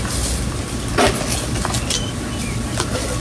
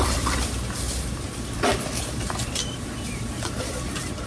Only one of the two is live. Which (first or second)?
first